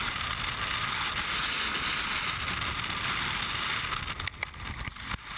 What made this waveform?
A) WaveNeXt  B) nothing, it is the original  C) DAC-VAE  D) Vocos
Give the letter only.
B